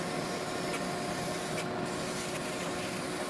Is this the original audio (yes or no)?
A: yes